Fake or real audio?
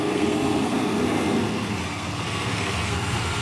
fake